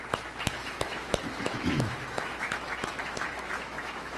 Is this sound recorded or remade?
remade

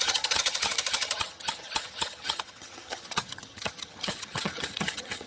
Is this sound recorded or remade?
remade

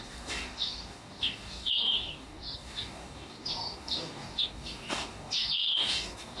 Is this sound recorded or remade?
remade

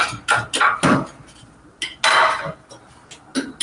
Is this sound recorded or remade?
recorded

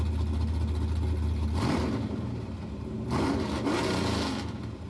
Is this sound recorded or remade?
recorded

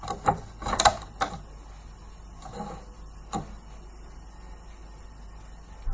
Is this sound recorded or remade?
recorded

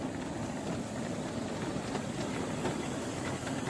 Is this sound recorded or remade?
recorded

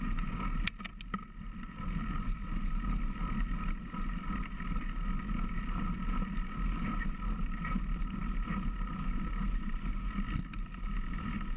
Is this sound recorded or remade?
recorded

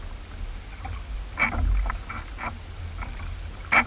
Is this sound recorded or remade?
recorded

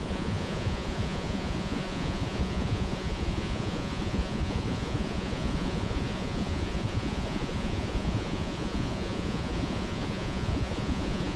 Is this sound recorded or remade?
remade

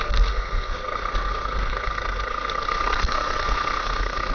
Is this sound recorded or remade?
remade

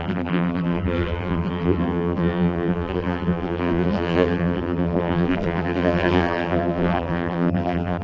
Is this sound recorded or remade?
remade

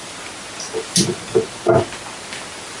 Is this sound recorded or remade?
recorded